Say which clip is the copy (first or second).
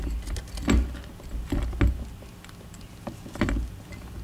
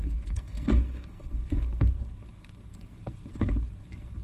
second